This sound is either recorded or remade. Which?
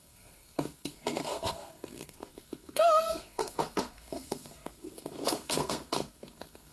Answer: remade